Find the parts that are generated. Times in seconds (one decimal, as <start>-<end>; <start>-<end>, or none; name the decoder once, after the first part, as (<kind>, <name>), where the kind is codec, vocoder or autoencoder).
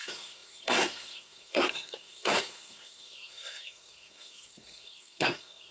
0.0-5.7 (codec, SNAC)